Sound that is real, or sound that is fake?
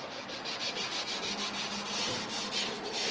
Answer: real